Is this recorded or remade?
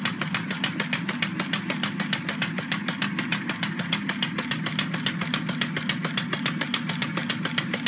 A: recorded